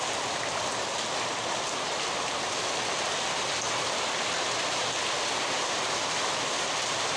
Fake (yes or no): no